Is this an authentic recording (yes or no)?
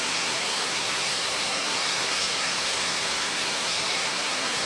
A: no